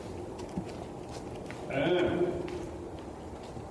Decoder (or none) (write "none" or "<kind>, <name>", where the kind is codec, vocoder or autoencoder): none